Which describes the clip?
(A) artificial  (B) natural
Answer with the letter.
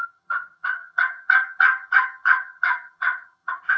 A